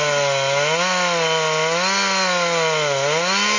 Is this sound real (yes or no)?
yes